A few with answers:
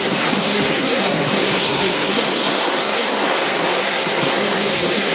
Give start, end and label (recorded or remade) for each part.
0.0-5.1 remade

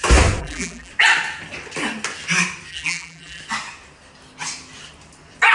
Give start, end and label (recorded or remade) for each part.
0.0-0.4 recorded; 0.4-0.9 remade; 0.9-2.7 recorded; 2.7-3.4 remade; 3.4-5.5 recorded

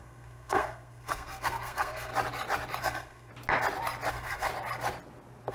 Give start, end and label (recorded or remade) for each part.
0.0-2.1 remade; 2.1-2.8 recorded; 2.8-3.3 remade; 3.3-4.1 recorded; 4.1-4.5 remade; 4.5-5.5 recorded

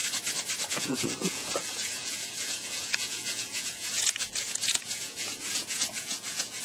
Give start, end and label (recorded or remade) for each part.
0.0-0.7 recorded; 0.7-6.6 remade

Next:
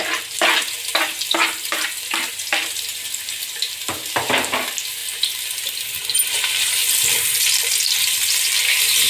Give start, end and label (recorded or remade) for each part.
0.0-9.1 recorded